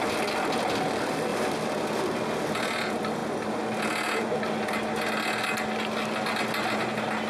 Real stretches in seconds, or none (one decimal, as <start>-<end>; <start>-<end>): 0.0-7.3